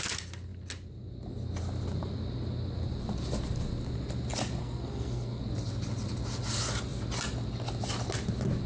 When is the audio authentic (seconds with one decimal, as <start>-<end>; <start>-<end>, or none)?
0.0-4.6; 5.4-8.7